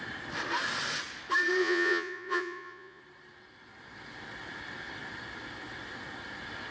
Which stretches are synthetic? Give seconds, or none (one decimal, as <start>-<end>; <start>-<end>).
1.6-3.0